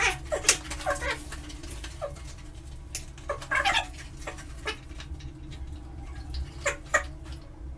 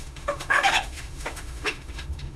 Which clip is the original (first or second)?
first